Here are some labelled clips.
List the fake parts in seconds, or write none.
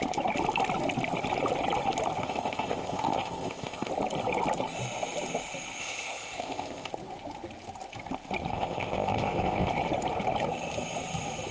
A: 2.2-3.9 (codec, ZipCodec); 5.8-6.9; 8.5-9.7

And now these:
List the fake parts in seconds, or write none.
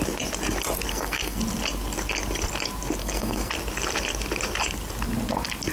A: 0.9-1.4 (codec, SNAC); 3.0-3.5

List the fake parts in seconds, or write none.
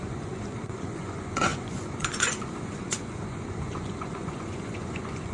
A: 0.0-5.3 (vocoder, Vocos)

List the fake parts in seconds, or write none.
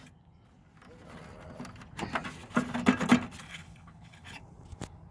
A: 3.5-4.4 (codec, HILCodec)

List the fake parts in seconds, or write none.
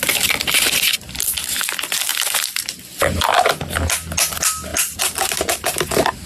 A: 4.7-5.8 (vocoder, BigVGAN v2)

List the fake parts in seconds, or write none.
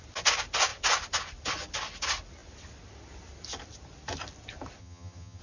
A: 4.8-5.4 (vocoder, HiFi-GAN)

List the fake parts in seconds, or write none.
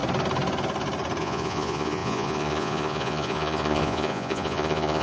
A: 1.2-5.0 (vocoder, Vocos)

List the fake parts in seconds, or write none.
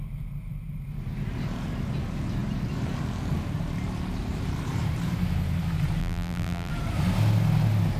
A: 6.0-6.7 (vocoder, BigVGAN v2)